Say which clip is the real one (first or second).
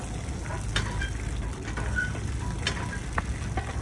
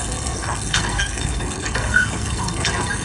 first